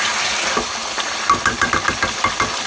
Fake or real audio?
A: real